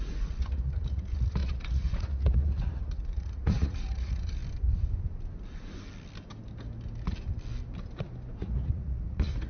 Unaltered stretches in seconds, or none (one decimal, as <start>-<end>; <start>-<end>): 4.4-8.4